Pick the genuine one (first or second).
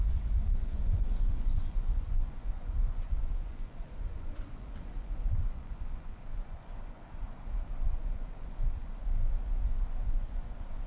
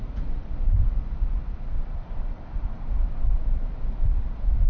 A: second